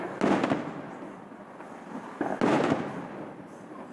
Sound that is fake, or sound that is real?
real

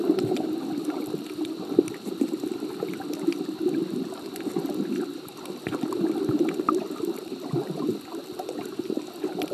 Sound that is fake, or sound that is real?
fake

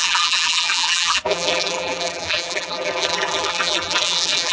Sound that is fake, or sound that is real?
fake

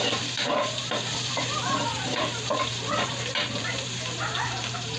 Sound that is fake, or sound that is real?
fake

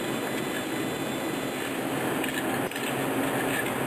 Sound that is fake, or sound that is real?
real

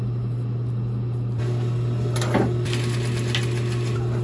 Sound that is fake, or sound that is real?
real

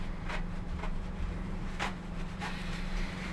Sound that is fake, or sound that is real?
fake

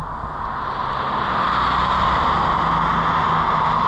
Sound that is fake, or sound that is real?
real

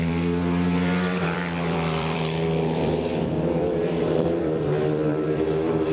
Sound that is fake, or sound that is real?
fake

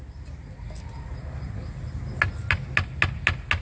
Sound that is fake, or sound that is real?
real